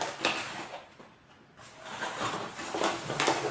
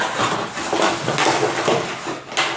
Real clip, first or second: second